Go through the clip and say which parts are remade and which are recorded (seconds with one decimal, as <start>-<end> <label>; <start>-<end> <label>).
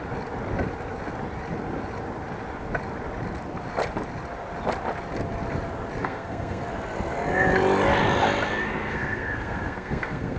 0.0-6.0 recorded; 6.0-6.6 remade; 6.6-8.8 recorded; 8.8-10.4 remade